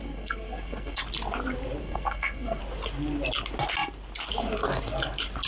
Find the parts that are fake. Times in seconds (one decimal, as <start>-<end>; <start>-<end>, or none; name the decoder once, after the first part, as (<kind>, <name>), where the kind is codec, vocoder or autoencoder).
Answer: 0.0-1.0 (codec, SNAC); 1.8-2.6